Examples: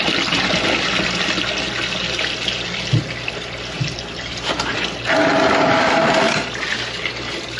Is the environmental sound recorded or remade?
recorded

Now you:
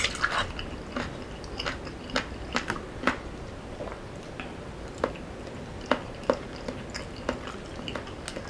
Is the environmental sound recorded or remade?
recorded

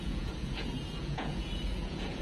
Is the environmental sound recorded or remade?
remade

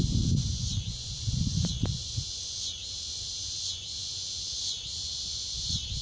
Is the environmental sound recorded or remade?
remade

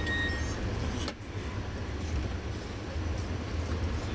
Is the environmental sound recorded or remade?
recorded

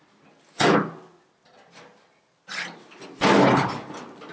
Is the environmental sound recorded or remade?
recorded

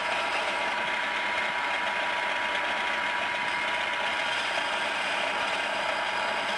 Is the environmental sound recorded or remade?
recorded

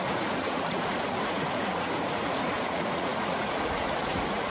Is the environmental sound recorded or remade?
remade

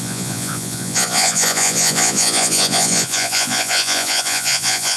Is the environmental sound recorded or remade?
remade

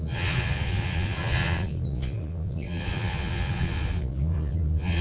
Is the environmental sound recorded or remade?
remade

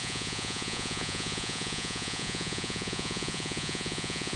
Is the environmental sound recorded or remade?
remade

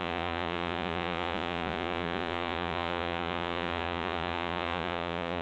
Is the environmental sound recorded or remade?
remade